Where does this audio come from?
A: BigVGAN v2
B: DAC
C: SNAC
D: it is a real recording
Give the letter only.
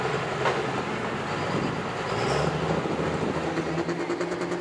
D